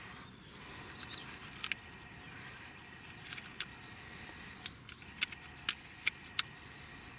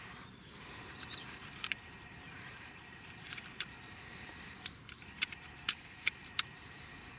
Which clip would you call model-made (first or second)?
second